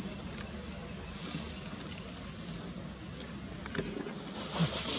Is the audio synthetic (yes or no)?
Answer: no